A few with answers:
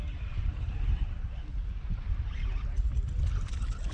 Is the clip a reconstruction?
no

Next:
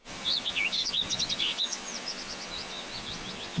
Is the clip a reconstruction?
yes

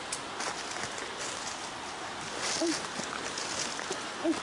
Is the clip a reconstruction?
no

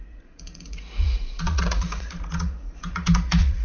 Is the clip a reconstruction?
yes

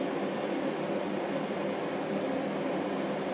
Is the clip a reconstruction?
no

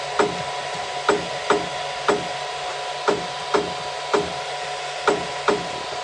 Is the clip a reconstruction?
no